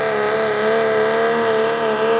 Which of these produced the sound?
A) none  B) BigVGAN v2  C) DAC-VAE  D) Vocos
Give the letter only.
A